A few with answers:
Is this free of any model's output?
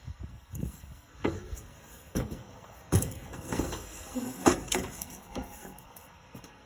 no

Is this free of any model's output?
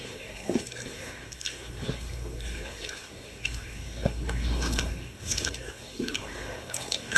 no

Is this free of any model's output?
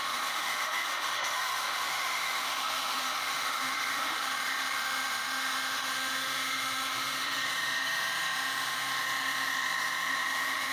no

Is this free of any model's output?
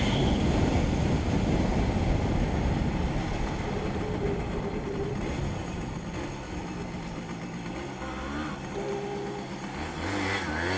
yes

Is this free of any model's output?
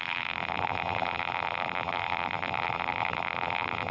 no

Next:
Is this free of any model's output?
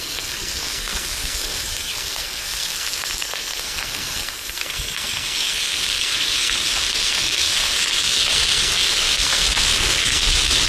no